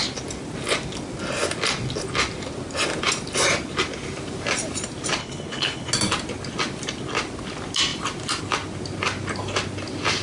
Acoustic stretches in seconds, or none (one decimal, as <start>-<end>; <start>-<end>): 0.0-5.2; 5.9-10.2